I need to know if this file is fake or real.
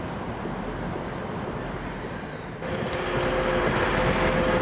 real